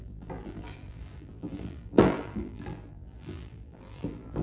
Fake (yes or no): yes